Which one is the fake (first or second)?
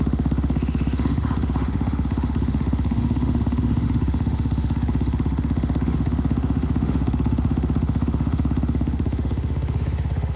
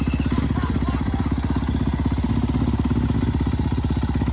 first